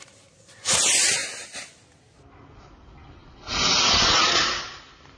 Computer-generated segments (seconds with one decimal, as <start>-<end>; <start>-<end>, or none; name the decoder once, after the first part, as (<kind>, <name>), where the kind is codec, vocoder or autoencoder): none